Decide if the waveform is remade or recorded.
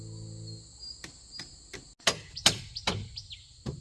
recorded